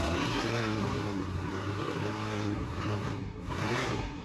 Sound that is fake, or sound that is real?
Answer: fake